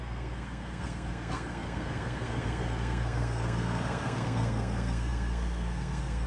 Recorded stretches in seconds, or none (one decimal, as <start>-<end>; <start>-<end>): none

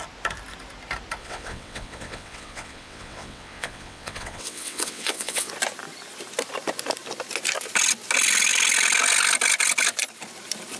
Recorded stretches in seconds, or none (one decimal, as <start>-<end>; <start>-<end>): 0.0-1.2; 5.5-10.8